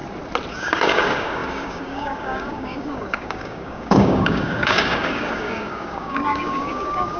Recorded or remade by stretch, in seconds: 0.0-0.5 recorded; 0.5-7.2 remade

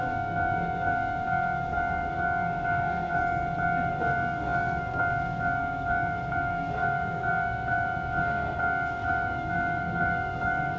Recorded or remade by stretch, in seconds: 0.0-3.2 remade; 3.2-3.9 recorded; 3.9-10.8 remade

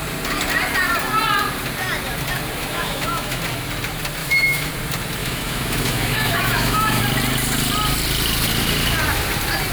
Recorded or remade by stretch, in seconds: 0.0-2.6 recorded; 2.6-3.4 remade; 3.4-4.2 recorded; 4.2-4.7 remade; 4.7-5.2 recorded; 5.2-7.0 remade; 7.0-9.7 recorded

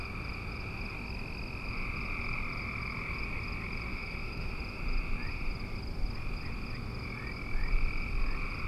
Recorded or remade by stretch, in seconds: 0.0-3.9 recorded; 3.9-4.5 remade; 4.5-8.7 recorded

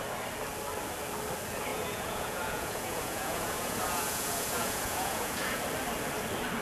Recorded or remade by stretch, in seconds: 0.0-1.7 recorded; 1.7-5.6 remade; 5.6-6.6 recorded

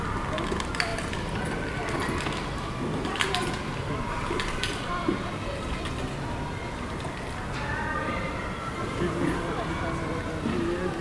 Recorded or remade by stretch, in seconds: 0.0-11.0 recorded

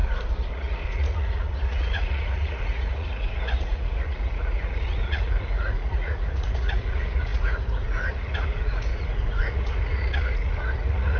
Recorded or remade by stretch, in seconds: 0.0-0.5 recorded; 0.5-11.2 remade

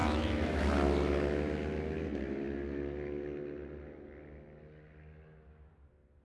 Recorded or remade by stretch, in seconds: 0.0-0.6 remade; 0.6-6.2 recorded